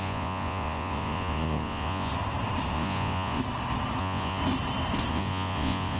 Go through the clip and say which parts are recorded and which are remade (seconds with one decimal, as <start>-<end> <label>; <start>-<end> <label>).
0.0-2.1 remade; 2.1-2.7 recorded; 2.7-3.4 remade; 3.4-4.0 recorded; 4.0-4.4 remade; 4.4-5.1 recorded; 5.1-6.0 remade